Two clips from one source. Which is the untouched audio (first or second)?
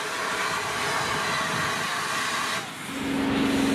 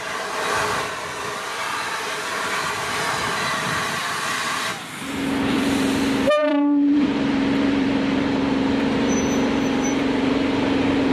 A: first